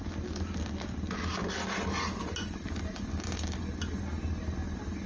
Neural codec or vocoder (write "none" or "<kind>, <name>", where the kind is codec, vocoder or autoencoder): none